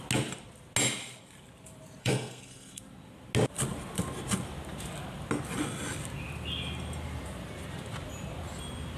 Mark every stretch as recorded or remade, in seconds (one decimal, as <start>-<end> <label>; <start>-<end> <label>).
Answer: 0.0-2.0 recorded; 2.0-2.8 remade; 2.8-9.0 recorded